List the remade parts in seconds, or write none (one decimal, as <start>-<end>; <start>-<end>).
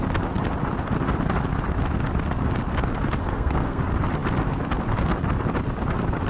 3.2-3.8